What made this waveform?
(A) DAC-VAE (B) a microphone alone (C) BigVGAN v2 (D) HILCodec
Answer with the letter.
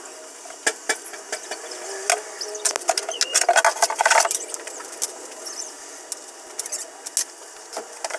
B